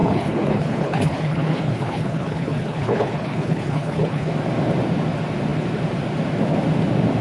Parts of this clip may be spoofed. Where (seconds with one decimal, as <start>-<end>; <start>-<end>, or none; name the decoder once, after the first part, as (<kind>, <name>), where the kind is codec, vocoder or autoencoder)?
0.0-4.3 (codec, HILCodec)